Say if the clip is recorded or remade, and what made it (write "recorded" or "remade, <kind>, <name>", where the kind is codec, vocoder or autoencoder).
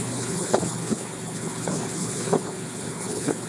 remade, codec, HILCodec